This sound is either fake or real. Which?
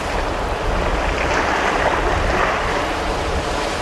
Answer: real